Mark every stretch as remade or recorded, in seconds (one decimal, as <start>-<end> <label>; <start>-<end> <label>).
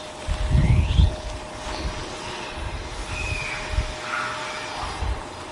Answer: 0.0-0.6 recorded; 0.6-1.3 remade; 1.3-5.5 recorded